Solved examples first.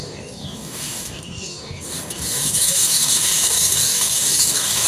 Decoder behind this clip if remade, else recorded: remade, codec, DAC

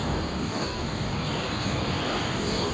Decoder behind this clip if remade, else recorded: remade, codec, DAC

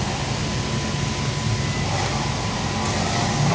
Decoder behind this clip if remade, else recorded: recorded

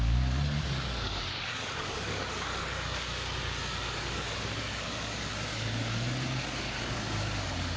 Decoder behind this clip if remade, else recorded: remade, codec, DAC